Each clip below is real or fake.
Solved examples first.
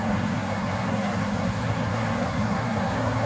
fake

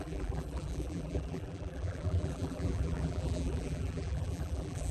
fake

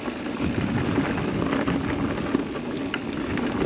real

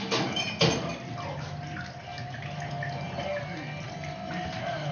real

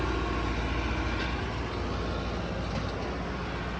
real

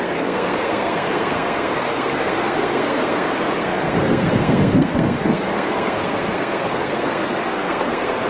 fake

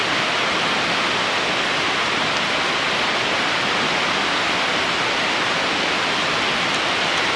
real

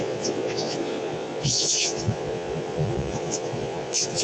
fake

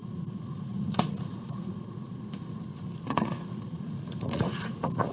fake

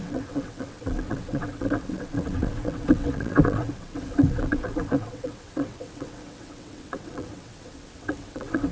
fake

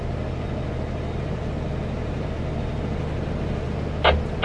real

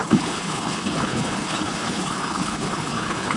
fake